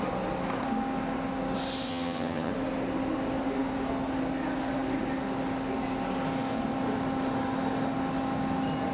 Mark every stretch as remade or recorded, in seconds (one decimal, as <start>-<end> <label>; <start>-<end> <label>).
0.0-1.9 recorded; 1.9-2.5 remade; 2.5-8.9 recorded